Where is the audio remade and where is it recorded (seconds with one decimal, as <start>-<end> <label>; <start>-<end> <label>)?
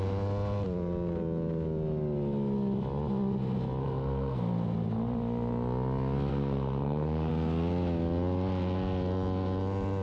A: 0.0-3.8 recorded; 3.8-4.4 remade; 4.4-6.3 recorded; 6.3-7.3 remade; 7.3-10.0 recorded